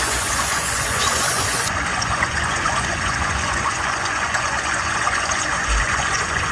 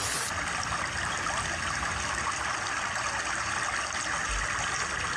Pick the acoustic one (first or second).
second